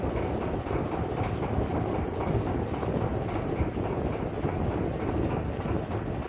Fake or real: real